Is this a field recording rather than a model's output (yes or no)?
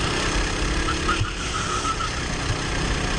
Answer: yes